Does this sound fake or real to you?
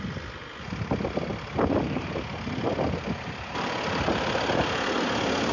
real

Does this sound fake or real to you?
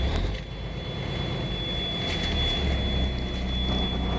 real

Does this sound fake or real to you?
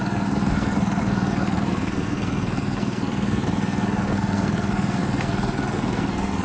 fake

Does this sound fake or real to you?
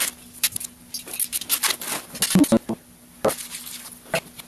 real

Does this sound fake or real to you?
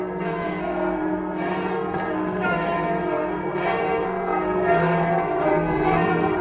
fake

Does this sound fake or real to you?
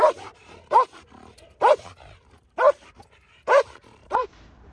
fake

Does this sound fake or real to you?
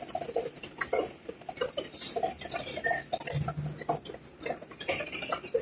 real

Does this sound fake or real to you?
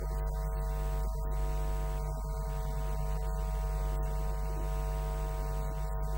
real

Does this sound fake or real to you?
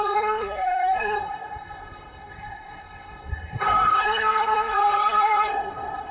fake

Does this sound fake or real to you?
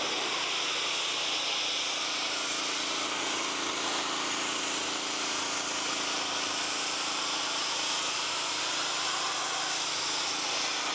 real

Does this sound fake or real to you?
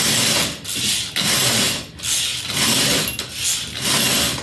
real